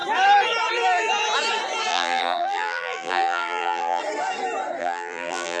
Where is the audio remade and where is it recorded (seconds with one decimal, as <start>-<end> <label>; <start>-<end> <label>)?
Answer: 0.0-1.9 recorded; 1.9-4.0 remade; 4.0-4.8 recorded; 4.8-5.6 remade